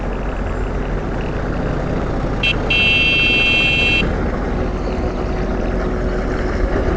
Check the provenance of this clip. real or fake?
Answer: real